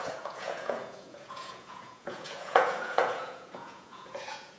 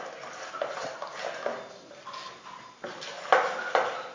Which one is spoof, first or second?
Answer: first